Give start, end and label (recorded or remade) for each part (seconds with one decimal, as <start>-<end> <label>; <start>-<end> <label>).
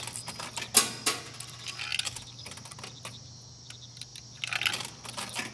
0.0-5.5 recorded